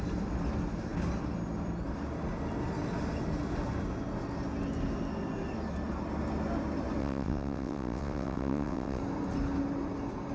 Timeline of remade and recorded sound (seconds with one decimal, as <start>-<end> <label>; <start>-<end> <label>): 0.0-7.0 recorded; 7.0-9.0 remade; 9.0-10.3 recorded

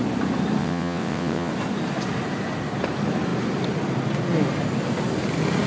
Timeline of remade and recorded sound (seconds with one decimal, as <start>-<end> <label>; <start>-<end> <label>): 0.0-0.6 recorded; 0.6-1.5 remade; 1.5-5.7 recorded

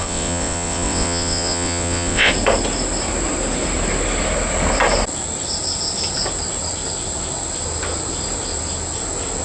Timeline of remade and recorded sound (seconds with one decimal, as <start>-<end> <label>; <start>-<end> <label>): 0.0-2.3 remade; 2.3-9.4 recorded

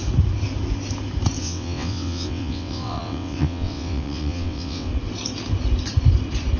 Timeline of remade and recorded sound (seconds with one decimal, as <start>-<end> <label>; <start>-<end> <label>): 0.0-1.4 recorded; 1.4-4.9 remade; 4.9-6.6 recorded

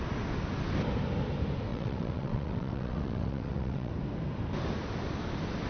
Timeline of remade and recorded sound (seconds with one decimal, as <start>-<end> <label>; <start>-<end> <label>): 0.0-1.7 recorded; 1.7-3.9 remade; 3.9-5.7 recorded